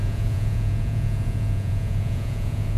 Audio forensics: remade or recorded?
remade